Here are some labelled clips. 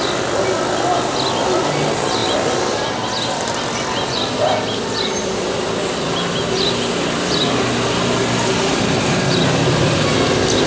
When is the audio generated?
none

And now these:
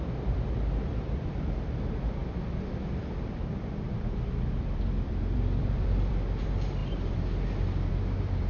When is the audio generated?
0.0-6.8; 7.9-8.5

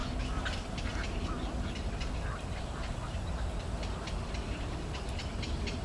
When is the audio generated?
none

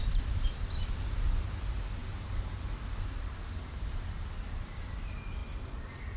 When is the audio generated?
none

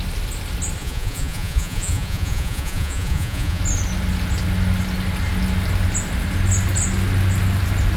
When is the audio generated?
0.8-3.6